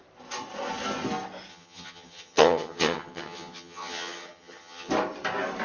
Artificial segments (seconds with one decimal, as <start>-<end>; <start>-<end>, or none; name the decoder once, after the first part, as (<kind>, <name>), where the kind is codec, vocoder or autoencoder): 1.5-4.9 (vocoder, HiFi-GAN)